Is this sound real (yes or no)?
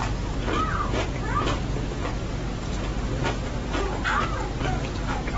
yes